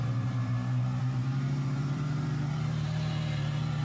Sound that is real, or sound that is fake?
fake